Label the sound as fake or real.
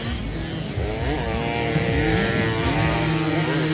real